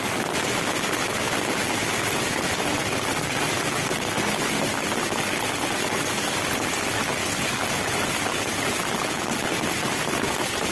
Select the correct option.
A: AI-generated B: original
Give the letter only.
B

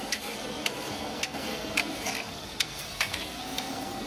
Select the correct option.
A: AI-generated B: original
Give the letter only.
A